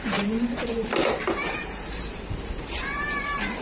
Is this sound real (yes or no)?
no